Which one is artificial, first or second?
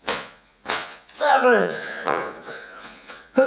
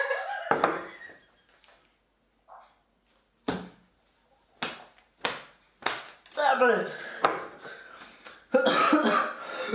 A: first